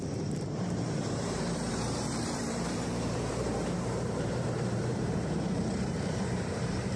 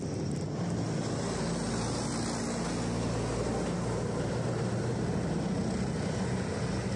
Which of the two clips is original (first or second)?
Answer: second